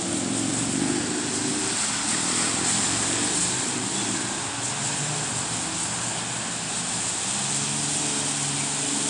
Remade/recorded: recorded